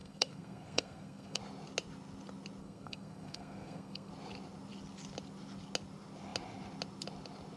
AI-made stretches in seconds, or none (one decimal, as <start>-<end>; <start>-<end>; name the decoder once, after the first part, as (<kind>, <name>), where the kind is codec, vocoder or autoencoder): 0.0-1.4 (codec, SNAC); 2.6-4.1